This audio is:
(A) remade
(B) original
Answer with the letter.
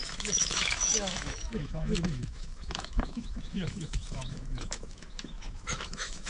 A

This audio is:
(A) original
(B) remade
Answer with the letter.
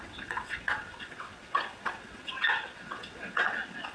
B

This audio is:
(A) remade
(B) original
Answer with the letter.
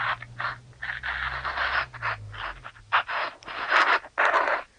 B